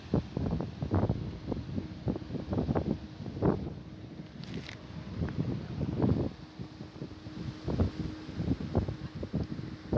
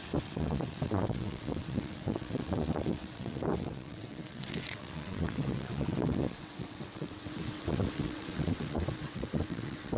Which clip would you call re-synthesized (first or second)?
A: second